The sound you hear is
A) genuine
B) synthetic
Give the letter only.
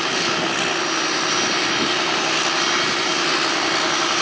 A